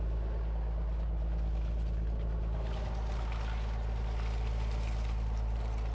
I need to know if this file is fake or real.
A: real